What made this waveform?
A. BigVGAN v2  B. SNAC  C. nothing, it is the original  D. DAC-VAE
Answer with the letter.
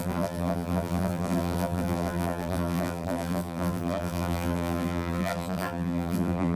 A